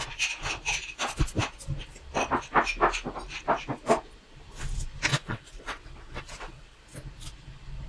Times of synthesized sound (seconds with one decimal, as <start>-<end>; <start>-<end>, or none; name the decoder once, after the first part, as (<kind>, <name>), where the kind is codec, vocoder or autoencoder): 5.1-6.8 (vocoder, WaveNeXt)

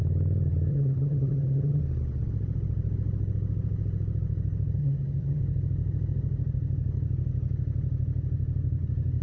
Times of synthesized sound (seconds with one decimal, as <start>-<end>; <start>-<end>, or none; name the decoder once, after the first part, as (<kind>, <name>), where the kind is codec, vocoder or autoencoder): 0.7-1.8 (vocoder, HiFi-GAN); 4.8-5.4